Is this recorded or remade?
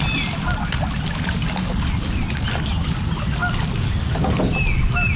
recorded